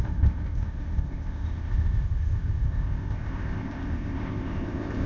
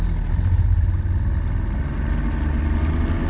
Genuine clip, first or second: second